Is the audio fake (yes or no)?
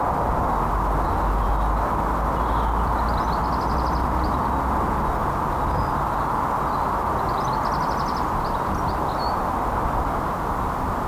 no